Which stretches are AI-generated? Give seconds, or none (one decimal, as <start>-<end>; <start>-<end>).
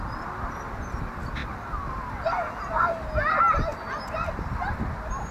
none